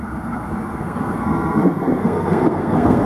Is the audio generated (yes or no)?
yes